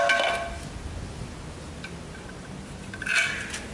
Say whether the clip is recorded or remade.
recorded